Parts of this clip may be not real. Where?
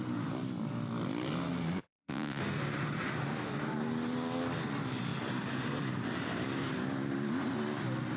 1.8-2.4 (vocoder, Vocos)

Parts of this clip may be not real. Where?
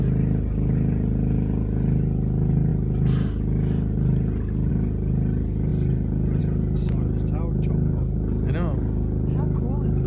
none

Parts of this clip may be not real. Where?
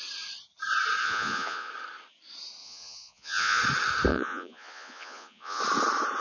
1.0-1.7 (vocoder, Vocos); 2.6-3.6; 4.1-5.6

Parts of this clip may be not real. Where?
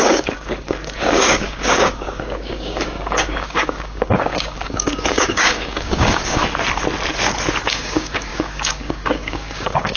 0.0-6.4 (codec, DAC); 7.6-10.0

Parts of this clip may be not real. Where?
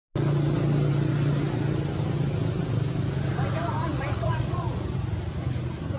3.9-4.8 (vocoder, Vocos)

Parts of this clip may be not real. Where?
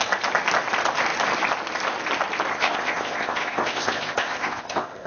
2.5-5.1 (codec, ZipCodec)